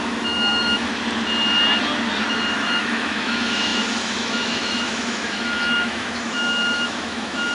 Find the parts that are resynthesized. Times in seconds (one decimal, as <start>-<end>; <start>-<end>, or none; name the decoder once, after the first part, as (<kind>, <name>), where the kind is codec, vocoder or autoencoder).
0.0-0.9 (autoencoder, DAC-VAE); 2.5-7.5